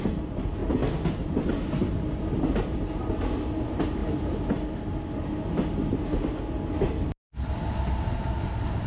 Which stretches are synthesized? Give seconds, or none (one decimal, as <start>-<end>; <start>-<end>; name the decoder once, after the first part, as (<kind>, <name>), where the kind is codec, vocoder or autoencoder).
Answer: none